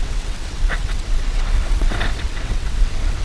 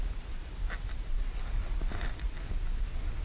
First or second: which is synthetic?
first